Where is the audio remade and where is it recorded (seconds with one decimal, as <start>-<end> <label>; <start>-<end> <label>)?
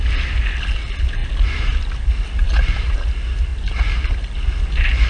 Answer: 0.0-5.1 recorded